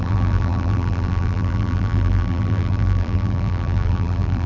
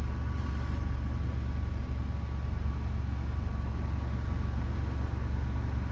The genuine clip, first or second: second